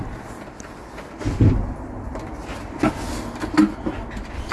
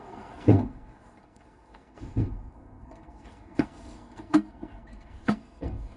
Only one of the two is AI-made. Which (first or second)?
second